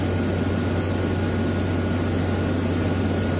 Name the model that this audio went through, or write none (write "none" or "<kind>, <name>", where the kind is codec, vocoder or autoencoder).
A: none